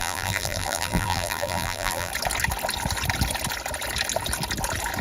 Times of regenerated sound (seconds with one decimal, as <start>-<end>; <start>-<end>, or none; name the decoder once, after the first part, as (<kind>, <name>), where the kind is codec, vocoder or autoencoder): 0.0-2.1 (vocoder, BigVGAN v2)

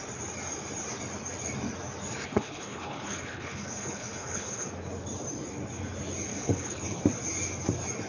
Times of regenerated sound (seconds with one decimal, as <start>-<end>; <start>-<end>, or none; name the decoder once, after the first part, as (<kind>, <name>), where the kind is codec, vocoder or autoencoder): 2.3-4.7 (codec, HILCodec); 6.3-7.0

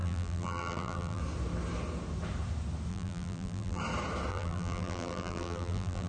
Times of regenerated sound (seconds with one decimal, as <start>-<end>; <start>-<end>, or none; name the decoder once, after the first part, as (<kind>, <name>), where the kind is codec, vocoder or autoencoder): 0.0-1.2 (vocoder, BigVGAN v2); 2.9-3.8; 4.3-6.1